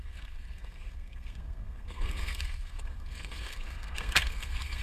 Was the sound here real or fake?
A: fake